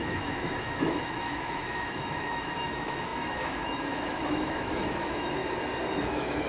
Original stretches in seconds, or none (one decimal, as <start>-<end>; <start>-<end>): 5.4-6.0